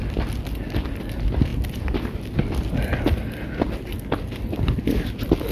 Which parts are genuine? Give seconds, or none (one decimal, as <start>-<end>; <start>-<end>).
0.0-5.5